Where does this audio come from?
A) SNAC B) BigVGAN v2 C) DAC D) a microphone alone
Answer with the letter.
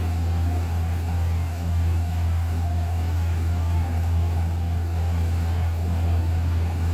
C